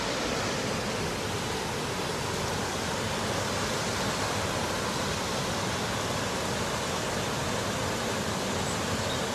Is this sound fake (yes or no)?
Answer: no